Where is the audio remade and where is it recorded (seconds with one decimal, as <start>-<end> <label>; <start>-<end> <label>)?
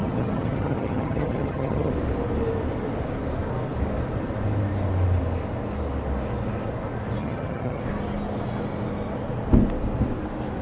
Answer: 0.0-1.9 remade; 1.9-7.2 recorded; 7.2-7.8 remade; 7.8-10.6 recorded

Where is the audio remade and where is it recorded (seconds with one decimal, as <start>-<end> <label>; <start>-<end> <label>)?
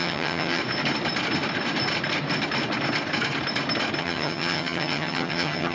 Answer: 0.0-0.6 remade; 0.6-4.0 recorded; 4.0-5.7 remade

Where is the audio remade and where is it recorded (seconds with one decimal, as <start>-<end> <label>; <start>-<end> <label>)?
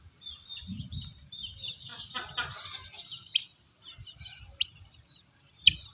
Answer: 0.0-5.9 recorded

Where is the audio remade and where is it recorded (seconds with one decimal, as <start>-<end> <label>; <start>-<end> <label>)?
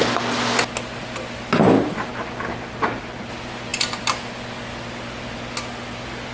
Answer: 0.0-6.3 recorded